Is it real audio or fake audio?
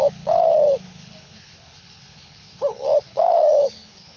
fake